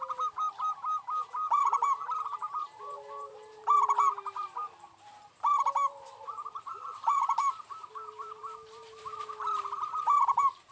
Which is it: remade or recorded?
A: remade